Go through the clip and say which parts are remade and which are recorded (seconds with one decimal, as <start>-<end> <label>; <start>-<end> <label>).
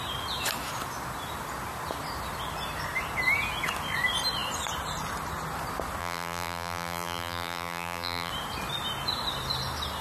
0.0-6.0 recorded; 6.0-8.3 remade; 8.3-10.0 recorded